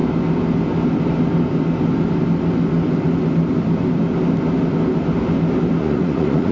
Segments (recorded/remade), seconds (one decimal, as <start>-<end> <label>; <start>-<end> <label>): 0.0-5.8 recorded; 5.8-6.5 remade